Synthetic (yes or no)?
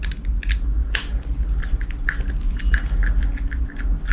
no